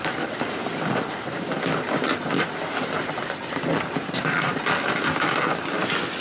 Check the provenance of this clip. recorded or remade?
recorded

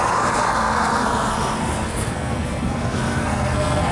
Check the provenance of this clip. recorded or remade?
remade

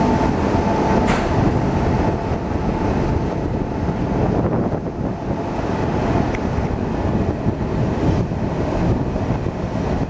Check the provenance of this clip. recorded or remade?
recorded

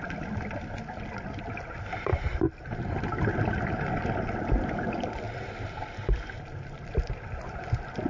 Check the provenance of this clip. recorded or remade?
recorded